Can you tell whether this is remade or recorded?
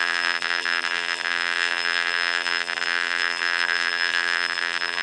remade